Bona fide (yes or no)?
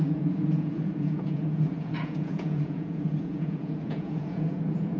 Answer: no